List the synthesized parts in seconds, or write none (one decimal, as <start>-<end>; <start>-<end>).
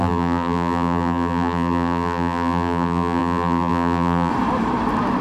0.0-4.3